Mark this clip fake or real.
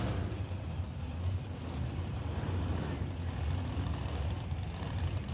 real